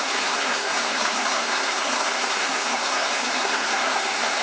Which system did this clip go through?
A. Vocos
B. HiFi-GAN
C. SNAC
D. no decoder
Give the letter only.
C